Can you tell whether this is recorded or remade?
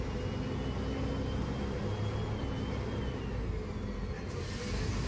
recorded